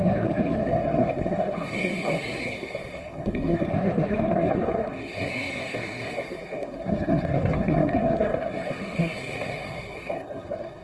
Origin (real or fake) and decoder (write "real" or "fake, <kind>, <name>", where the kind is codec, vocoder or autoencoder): fake, codec, SNAC